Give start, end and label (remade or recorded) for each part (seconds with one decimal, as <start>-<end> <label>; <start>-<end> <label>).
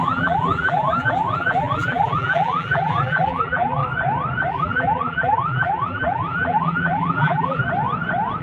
0.0-3.8 remade; 3.8-4.5 recorded; 4.5-7.6 remade; 7.6-8.4 recorded